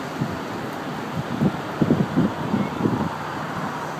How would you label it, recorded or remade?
recorded